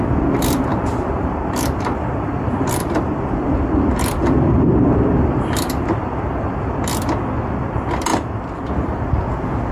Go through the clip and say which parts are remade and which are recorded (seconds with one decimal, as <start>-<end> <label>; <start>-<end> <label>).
0.0-0.7 recorded; 0.7-5.7 remade; 5.7-8.1 recorded; 8.1-8.7 remade; 8.7-9.7 recorded